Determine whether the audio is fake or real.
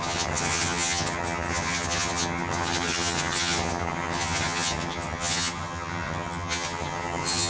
fake